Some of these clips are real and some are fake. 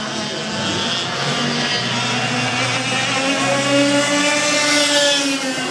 real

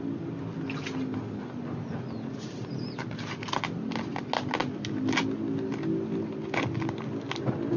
real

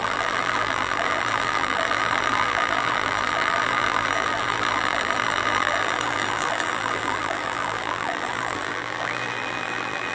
fake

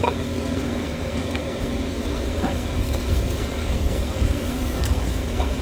fake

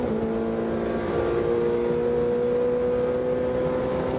real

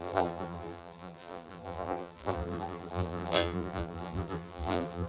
fake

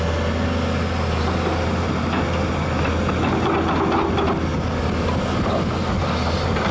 real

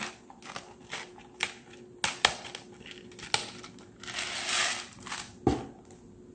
real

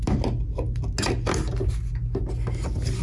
real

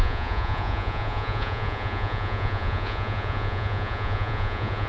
fake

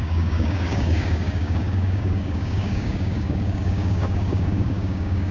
fake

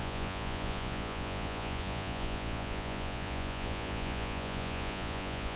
fake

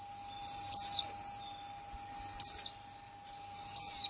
real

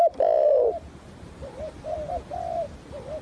real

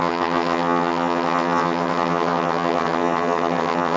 fake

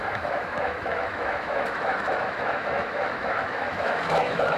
fake